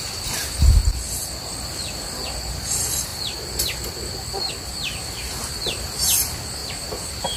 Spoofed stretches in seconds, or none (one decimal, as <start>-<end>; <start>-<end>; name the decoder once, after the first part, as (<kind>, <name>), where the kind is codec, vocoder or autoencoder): 5.4-6.1 (vocoder, BigVGAN v2); 6.6-7.4